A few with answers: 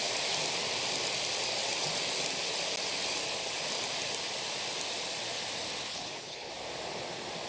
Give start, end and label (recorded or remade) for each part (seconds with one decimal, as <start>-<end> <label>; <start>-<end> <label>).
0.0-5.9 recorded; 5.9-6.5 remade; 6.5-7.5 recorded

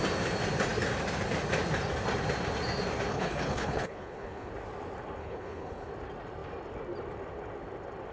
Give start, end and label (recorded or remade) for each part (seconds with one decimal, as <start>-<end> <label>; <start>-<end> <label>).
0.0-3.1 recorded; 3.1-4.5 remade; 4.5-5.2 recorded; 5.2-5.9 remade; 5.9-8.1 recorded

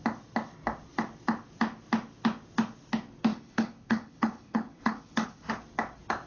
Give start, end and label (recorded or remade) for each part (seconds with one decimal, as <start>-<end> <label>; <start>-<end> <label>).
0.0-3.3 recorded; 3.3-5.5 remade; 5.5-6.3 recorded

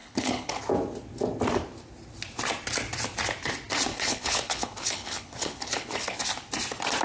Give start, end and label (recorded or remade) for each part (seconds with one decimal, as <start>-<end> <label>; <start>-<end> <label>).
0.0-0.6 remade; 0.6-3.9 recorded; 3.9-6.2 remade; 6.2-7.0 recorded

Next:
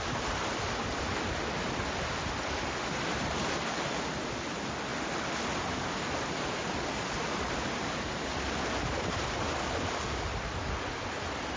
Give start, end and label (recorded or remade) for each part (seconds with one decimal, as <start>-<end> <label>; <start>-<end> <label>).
0.0-11.6 recorded

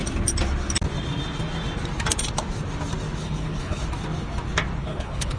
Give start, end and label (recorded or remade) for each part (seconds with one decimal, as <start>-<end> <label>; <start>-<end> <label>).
0.0-3.2 recorded; 3.2-3.8 remade; 3.8-4.8 recorded; 4.8-5.4 remade

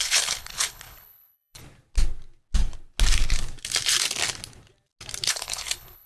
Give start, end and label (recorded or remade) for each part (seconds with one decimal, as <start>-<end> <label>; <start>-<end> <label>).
0.0-1.6 remade; 1.6-5.3 recorded; 5.3-6.1 remade